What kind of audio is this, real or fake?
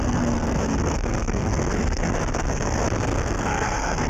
fake